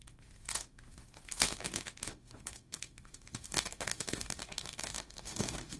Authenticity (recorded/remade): remade